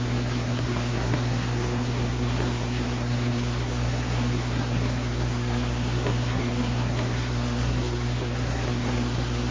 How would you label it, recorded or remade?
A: remade